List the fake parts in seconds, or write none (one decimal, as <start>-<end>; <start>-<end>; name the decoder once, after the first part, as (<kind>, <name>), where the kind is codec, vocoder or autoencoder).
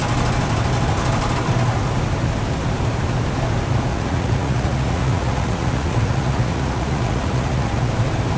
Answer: 3.9-7.9 (vocoder, Vocos)